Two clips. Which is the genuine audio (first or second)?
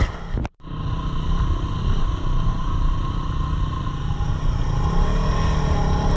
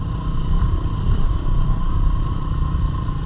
first